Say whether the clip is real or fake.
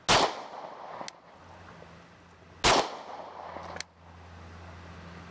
real